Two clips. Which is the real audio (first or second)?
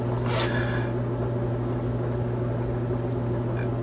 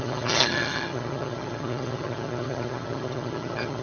first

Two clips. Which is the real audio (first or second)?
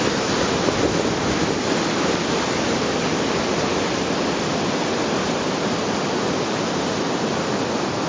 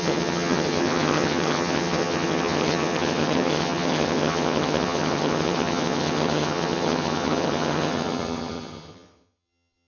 first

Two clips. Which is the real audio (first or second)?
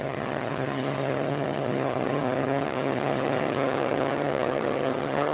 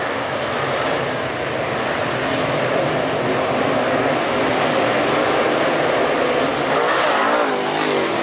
second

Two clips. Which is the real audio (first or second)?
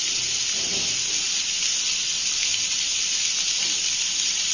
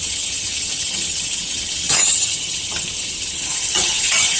first